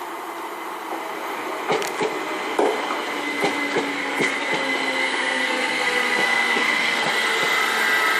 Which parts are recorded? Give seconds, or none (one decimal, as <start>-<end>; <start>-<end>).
0.0-3.9; 4.5-5.0; 7.1-8.2